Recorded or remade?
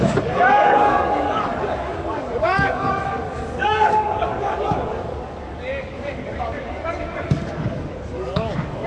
remade